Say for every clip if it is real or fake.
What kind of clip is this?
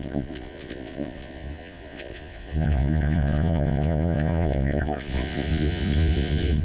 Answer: fake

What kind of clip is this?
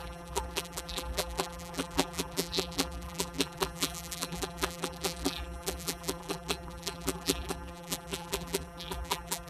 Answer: fake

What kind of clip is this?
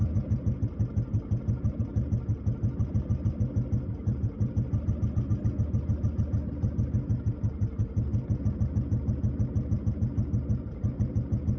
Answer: real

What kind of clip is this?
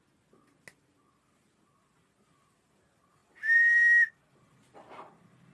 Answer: real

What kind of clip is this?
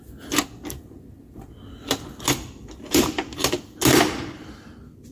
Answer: real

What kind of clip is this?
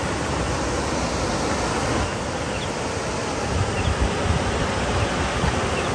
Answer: real